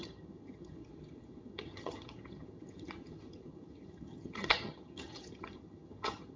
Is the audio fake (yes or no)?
yes